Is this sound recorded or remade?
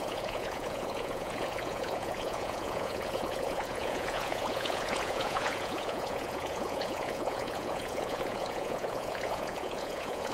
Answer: remade